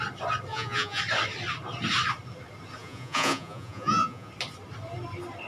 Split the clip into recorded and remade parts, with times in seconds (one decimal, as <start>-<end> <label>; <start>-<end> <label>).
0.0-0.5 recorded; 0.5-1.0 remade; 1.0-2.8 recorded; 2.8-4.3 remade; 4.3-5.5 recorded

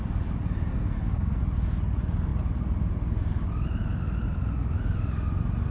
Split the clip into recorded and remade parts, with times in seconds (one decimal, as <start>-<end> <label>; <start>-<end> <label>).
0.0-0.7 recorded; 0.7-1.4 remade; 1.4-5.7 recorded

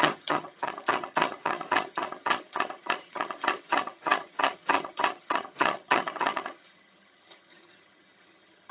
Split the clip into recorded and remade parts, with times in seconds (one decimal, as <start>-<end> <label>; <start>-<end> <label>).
0.0-8.7 remade

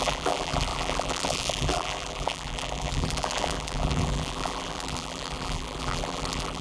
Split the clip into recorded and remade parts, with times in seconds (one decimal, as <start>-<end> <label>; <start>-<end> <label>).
0.0-6.6 remade

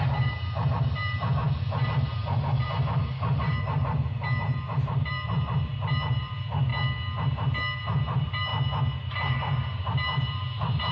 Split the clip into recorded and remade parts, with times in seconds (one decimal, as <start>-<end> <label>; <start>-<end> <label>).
0.0-6.7 remade; 6.7-7.8 recorded; 7.8-8.5 remade; 8.5-9.0 recorded; 9.0-10.9 remade

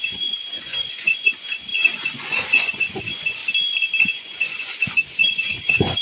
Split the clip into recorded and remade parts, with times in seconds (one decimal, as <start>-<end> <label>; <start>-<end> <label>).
0.0-3.4 remade; 3.4-4.0 recorded; 4.0-6.0 remade

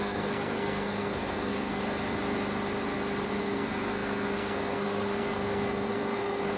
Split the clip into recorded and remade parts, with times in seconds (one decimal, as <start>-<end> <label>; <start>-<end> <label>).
0.0-1.8 remade; 1.8-3.4 recorded; 3.4-6.6 remade